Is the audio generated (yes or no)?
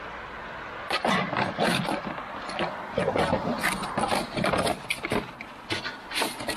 no